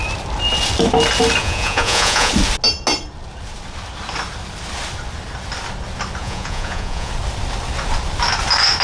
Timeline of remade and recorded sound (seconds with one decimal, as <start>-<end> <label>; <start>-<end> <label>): 0.0-1.4 recorded; 1.4-2.3 remade; 2.3-6.2 recorded; 6.2-7.1 remade; 7.1-8.8 recorded